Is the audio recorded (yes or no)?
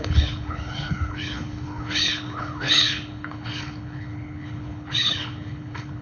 no